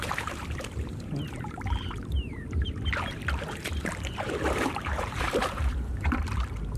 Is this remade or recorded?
remade